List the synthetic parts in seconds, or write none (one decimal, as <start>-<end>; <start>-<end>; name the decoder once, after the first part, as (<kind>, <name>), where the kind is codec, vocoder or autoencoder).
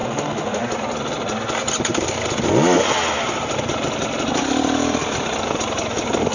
0.0-0.6 (autoencoder, DAC-VAE)